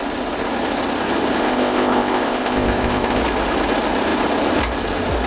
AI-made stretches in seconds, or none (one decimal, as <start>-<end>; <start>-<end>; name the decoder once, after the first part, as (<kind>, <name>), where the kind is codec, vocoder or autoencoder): 1.4-3.2 (codec, ZipCodec)